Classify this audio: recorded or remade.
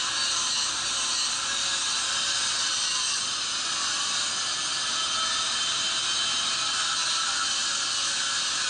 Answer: recorded